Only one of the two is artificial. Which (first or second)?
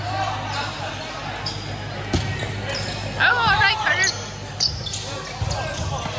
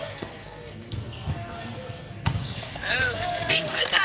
second